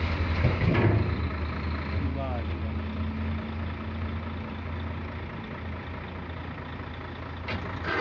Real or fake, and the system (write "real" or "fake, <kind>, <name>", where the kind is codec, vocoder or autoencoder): real